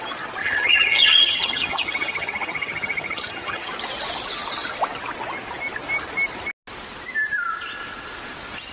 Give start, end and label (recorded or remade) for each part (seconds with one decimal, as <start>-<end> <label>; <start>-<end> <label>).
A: 0.0-0.4 recorded; 0.4-3.7 remade; 3.7-8.7 recorded

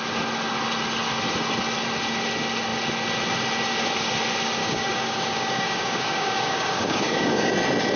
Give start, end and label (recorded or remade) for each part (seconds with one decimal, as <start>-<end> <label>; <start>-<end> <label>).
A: 0.0-4.6 recorded; 4.6-7.5 remade; 7.5-8.0 recorded

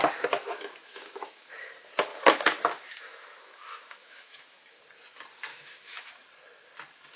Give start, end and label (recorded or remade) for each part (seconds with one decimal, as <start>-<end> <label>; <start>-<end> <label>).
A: 0.0-0.4 recorded; 0.4-1.5 remade; 1.5-2.1 recorded; 2.1-4.8 remade; 4.8-5.5 recorded; 5.5-6.1 remade; 6.1-7.2 recorded

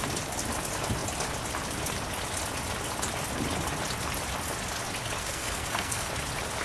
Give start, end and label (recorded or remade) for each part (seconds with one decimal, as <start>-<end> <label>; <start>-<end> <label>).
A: 0.0-5.2 recorded; 5.2-6.1 remade; 6.1-6.6 recorded

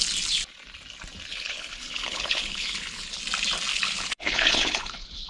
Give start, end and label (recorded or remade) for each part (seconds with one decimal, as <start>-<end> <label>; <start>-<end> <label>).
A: 0.0-1.3 recorded; 1.3-3.2 remade; 3.2-3.7 recorded; 3.7-5.3 remade

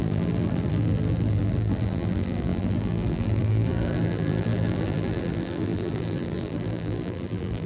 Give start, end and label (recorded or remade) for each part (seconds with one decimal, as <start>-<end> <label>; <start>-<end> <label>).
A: 0.0-7.7 remade